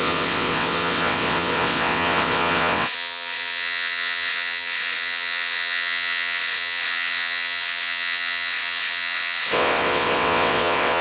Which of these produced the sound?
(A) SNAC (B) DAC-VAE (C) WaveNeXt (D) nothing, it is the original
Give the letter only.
C